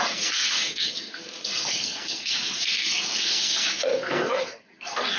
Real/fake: fake